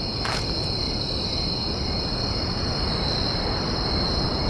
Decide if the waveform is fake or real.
real